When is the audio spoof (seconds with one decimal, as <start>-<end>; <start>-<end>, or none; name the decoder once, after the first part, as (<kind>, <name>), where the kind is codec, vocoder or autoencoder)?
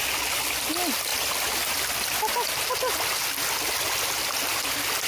none